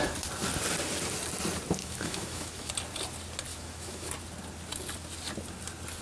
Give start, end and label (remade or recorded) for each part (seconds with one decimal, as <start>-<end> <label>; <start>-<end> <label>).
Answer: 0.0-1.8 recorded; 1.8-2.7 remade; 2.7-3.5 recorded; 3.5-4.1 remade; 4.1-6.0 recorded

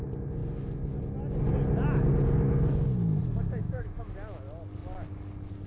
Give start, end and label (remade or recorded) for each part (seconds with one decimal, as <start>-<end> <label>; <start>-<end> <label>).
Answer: 0.0-3.6 recorded; 3.6-4.1 remade; 4.1-5.7 recorded

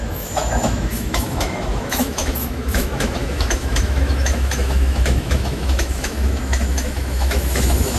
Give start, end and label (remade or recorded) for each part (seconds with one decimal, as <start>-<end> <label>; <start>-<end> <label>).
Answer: 0.0-8.0 remade